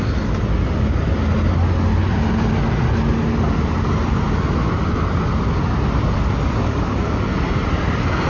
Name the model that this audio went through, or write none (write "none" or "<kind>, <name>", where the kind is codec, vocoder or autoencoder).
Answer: none